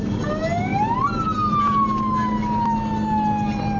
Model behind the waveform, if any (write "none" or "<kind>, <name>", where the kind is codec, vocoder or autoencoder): none